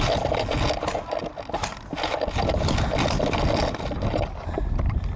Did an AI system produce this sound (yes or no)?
no